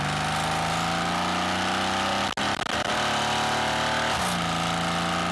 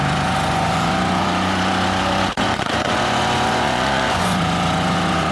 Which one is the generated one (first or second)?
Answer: second